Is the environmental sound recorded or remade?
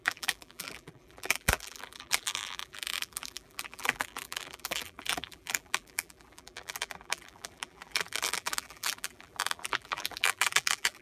remade